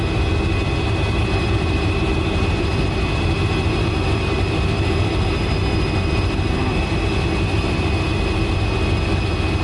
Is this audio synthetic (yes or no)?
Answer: yes